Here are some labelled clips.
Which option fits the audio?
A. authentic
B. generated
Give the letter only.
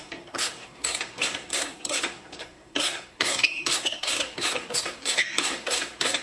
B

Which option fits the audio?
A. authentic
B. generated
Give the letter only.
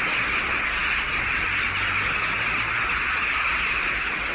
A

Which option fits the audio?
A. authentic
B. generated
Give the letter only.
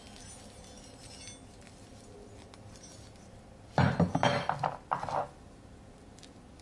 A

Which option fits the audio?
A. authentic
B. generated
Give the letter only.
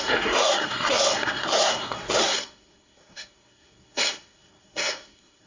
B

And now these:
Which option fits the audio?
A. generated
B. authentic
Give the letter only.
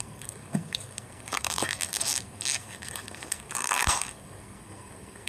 A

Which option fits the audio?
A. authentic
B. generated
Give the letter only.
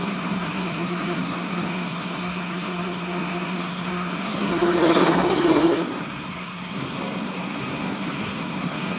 B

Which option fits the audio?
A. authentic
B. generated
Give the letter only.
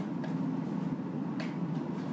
A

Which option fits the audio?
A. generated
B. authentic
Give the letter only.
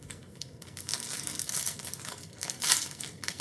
A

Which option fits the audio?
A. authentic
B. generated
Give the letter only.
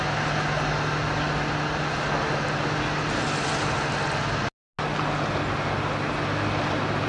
A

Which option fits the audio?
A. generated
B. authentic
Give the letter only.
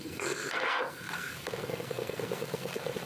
A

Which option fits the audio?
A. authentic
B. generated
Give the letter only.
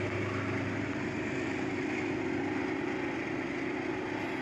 A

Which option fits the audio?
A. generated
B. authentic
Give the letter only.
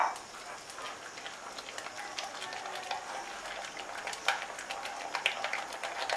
B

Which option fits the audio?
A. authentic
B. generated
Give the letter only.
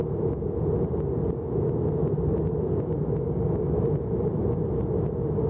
A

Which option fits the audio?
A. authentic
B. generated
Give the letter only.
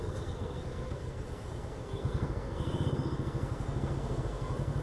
B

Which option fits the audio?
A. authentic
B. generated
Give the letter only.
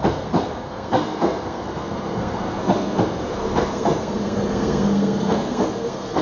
B